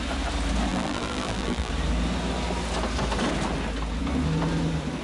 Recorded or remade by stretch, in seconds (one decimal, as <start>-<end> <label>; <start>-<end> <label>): 0.0-0.7 recorded; 0.7-1.7 remade; 1.7-5.0 recorded